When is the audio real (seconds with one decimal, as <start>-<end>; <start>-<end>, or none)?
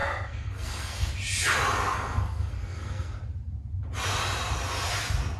1.1-1.8; 3.2-5.4